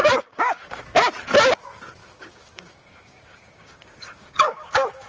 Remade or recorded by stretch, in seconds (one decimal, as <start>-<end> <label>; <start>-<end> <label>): 0.0-0.8 remade; 0.8-2.0 recorded; 2.0-5.1 remade

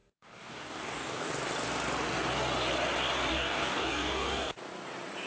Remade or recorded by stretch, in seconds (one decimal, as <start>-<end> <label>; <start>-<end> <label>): 0.0-1.3 remade; 1.3-3.3 recorded; 3.3-4.5 remade; 4.5-5.3 recorded